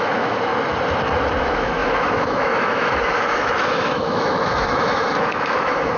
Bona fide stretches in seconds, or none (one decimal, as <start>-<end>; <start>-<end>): 0.5-1.4